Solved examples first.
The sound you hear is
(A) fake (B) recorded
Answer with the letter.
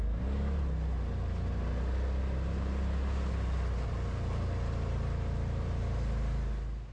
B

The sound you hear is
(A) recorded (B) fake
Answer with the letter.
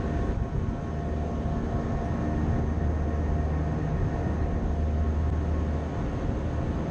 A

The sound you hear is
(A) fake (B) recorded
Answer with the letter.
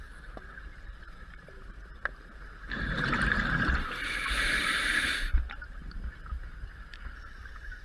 A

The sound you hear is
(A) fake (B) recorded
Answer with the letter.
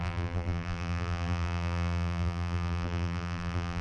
A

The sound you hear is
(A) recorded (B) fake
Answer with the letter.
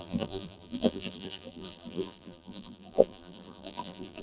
B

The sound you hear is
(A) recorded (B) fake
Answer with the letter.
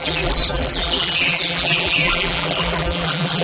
B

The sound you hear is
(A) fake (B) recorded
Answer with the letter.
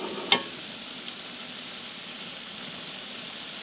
B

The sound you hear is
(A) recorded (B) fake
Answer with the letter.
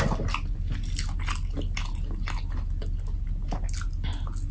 A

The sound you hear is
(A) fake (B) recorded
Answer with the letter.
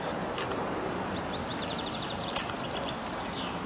A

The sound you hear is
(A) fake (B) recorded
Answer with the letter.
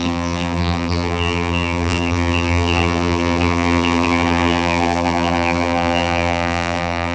A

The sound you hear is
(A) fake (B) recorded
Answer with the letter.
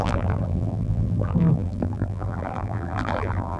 A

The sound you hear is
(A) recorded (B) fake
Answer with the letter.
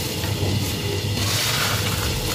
B